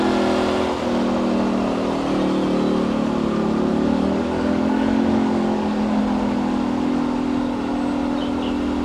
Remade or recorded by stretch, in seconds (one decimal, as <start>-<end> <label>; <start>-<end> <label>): 0.0-3.7 recorded; 3.7-6.0 remade; 6.0-8.8 recorded